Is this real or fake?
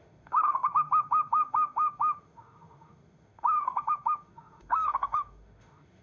fake